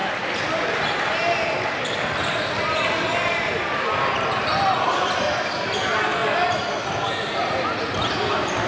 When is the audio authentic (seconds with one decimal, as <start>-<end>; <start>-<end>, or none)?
0.0-8.7